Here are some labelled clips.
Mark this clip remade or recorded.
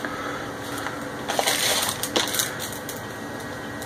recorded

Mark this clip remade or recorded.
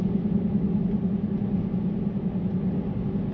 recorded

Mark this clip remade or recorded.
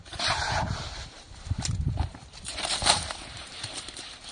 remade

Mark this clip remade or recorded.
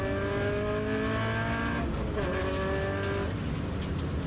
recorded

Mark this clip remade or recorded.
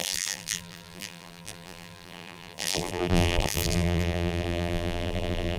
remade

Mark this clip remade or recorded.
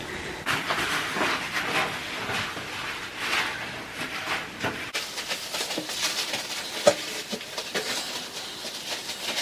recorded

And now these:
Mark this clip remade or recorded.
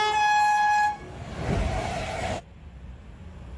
recorded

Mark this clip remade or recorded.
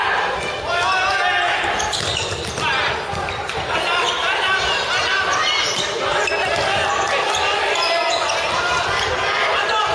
recorded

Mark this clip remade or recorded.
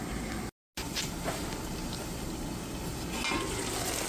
recorded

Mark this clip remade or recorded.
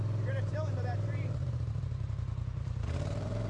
remade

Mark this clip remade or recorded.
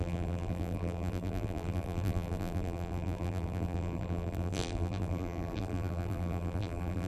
remade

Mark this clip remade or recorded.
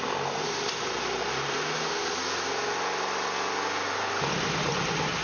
recorded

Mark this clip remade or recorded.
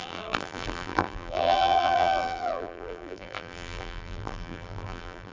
remade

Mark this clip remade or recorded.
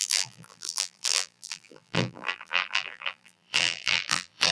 remade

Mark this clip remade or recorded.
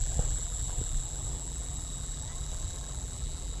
remade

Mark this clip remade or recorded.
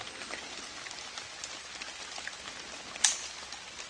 recorded